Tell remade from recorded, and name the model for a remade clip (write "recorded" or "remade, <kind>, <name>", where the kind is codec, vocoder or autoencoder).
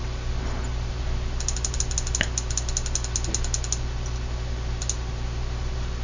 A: recorded